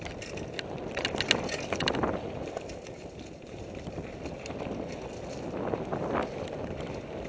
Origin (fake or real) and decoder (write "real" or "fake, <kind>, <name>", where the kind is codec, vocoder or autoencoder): real